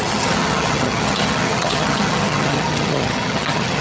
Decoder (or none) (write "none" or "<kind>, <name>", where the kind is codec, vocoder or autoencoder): vocoder, HiFi-GAN